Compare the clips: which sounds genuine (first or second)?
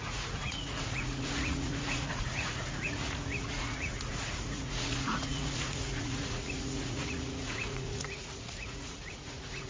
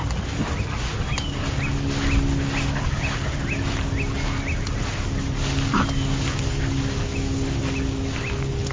second